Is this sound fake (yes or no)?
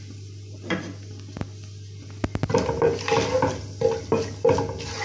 no